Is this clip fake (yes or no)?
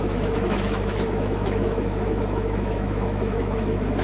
yes